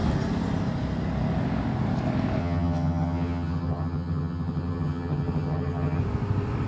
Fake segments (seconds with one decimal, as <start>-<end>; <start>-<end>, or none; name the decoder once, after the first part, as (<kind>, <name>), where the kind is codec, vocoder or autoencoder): 2.4-6.0 (vocoder, HiFi-GAN)